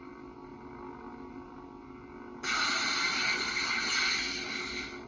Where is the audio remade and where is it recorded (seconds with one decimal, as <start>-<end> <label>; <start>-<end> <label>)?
0.0-5.1 recorded